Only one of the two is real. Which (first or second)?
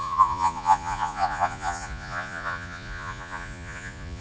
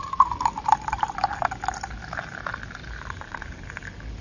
second